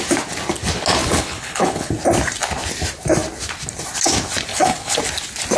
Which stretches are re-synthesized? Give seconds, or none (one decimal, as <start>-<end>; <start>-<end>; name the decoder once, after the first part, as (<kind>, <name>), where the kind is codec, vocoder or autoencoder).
1.0-1.9 (codec, HILCodec); 4.5-5.0